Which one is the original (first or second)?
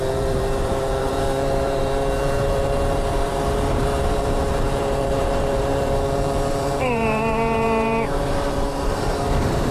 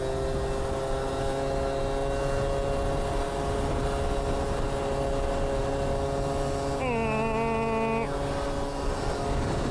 second